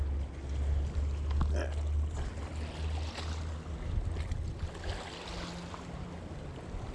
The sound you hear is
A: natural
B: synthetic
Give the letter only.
A